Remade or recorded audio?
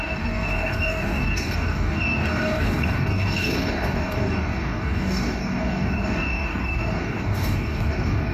remade